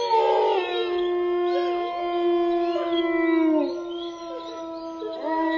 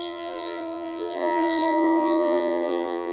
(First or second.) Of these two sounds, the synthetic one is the second